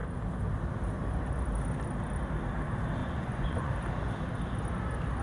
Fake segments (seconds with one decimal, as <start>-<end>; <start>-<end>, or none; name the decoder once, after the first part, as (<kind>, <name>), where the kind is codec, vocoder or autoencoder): 3.0-3.7 (vocoder, Vocos)